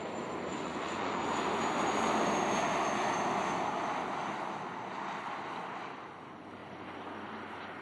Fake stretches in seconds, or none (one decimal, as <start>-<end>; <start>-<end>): 0.5-1.2